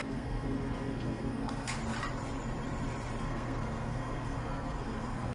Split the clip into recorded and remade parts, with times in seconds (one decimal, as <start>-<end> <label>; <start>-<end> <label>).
0.0-1.8 remade; 1.8-3.2 recorded; 3.2-5.3 remade